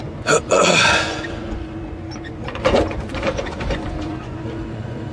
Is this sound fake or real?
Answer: fake